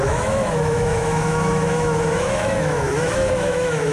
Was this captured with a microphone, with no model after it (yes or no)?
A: no